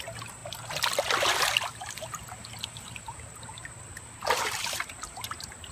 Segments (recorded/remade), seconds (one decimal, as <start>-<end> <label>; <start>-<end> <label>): 0.0-5.7 recorded